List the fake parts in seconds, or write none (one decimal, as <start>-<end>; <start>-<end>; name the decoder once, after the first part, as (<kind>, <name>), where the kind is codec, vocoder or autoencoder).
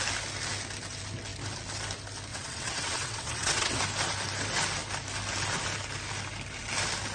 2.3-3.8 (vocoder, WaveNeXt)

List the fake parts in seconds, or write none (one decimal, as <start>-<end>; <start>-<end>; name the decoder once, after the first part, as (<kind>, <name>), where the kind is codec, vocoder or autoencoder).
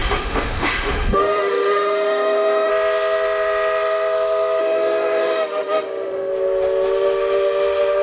0.0-2.7 (autoencoder, DAC-VAE); 4.6-6.3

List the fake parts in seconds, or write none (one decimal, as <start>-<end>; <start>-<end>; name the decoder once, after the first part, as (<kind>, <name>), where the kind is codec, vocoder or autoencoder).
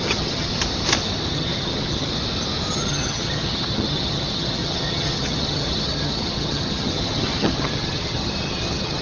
0.0-0.5 (vocoder, HiFi-GAN); 1.3-2.1; 2.7-9.0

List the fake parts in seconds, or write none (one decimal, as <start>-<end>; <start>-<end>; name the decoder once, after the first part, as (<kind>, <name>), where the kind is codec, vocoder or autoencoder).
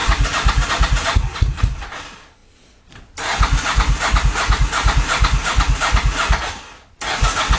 none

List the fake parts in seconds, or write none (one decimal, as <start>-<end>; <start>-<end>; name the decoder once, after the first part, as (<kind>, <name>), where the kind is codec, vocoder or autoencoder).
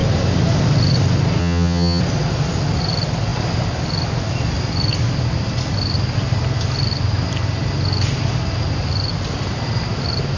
1.4-2.0 (vocoder, HiFi-GAN)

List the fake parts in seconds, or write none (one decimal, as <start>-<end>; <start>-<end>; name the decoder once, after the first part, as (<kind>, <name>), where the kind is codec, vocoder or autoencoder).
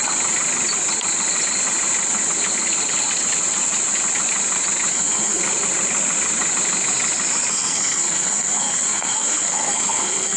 4.9-5.4 (codec, SNAC); 7.5-10.4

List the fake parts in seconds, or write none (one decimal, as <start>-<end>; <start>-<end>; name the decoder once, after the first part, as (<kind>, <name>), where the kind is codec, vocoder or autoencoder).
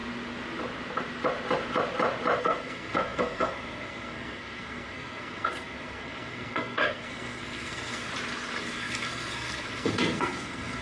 2.4-8.1 (codec, SNAC); 8.6-10.8